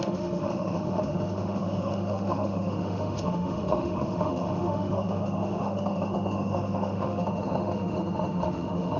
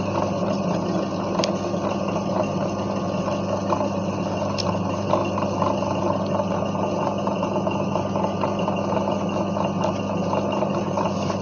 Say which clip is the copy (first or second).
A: first